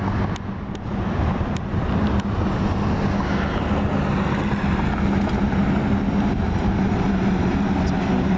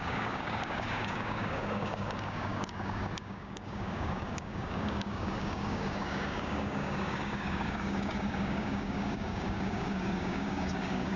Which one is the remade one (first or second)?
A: second